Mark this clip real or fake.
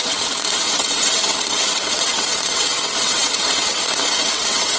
fake